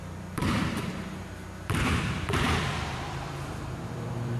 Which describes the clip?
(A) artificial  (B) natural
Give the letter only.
A